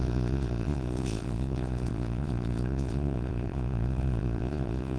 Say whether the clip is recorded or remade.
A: remade